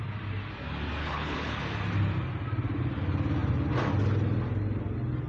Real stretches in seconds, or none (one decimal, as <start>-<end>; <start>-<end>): 0.0-1.0; 1.6-5.3